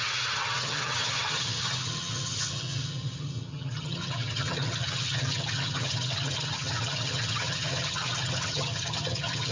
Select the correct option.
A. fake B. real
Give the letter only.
A